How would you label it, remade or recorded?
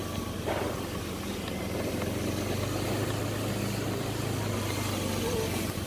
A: recorded